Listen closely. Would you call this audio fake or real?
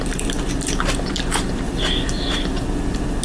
real